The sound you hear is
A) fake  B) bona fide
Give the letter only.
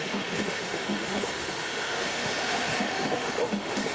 A